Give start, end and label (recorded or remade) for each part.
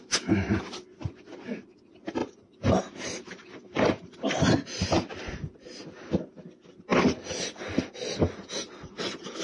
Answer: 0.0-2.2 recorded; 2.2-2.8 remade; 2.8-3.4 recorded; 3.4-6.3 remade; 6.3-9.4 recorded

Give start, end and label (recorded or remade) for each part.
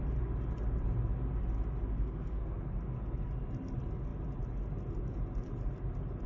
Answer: 0.0-1.9 recorded; 1.9-2.6 remade; 2.6-6.3 recorded